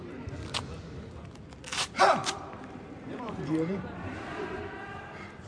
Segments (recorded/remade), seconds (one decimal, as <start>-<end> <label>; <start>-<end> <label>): 0.0-1.7 recorded; 1.7-5.0 remade; 5.0-5.5 recorded